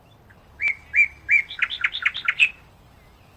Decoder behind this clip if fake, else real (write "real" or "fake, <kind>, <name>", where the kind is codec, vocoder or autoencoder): real